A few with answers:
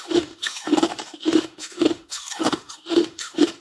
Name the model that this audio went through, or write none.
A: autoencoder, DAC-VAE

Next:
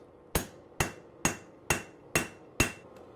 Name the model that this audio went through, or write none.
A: none